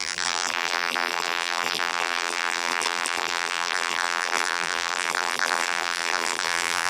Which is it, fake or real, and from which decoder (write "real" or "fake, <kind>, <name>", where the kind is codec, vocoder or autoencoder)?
fake, vocoder, BigVGAN v2